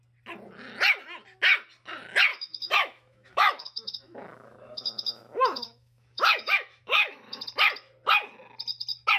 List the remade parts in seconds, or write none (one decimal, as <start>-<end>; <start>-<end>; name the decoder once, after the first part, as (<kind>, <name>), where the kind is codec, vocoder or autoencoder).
2.3-7.4 (autoencoder, DAC-VAE)